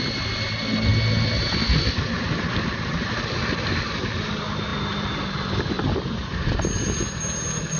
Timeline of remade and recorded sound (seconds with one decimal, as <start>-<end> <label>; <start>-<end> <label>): 0.0-7.8 recorded